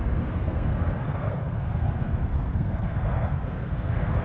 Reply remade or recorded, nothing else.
remade